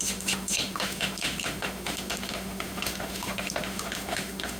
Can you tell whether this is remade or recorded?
remade